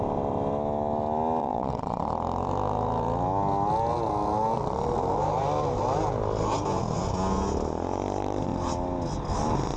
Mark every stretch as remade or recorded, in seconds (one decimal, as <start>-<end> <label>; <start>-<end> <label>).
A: 0.0-1.4 recorded; 1.4-2.0 remade; 2.0-9.8 recorded